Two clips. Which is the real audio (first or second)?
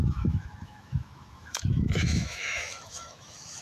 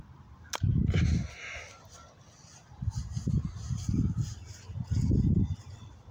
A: second